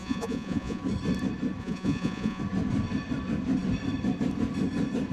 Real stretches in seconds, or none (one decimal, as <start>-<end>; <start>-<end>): 0.8-1.6; 2.4-5.1